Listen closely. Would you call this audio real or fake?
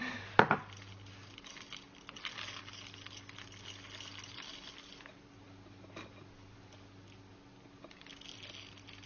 real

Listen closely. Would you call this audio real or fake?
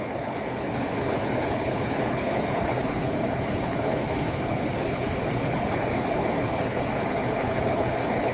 fake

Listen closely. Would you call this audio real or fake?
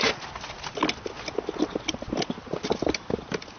real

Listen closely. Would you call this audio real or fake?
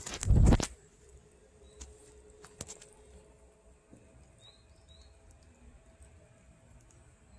real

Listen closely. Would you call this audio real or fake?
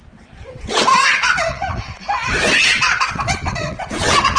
fake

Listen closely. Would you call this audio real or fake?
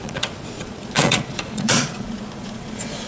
fake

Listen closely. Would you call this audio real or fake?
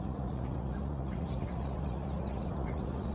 fake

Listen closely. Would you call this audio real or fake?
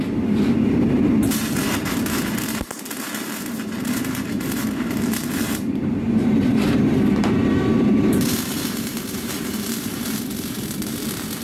fake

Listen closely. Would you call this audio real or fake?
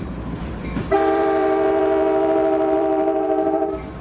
fake